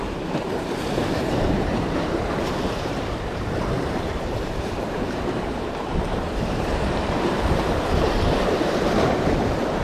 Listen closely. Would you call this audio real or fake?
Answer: fake